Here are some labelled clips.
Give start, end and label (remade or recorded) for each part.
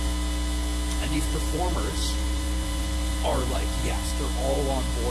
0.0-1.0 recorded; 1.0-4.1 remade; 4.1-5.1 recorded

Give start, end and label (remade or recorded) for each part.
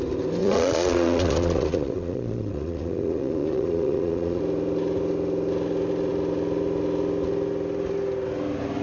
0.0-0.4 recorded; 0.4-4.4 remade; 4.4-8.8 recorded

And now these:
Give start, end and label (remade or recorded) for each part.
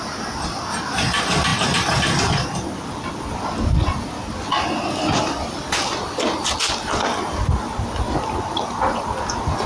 0.0-9.7 recorded